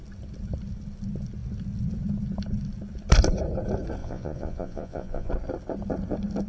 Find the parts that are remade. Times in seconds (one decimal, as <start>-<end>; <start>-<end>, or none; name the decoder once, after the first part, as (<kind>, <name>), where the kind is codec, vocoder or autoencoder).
4.0-5.3 (vocoder, Vocos)